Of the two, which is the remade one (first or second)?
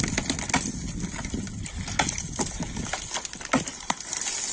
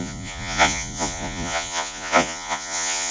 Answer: second